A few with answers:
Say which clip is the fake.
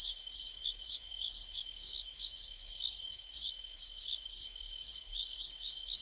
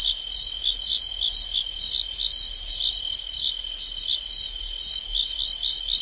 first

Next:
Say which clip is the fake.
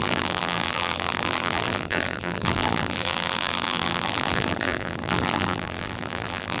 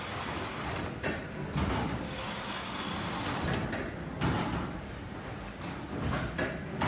first